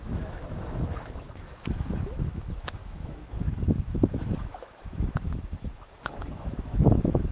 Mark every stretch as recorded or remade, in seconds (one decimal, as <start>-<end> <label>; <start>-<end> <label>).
0.0-7.3 remade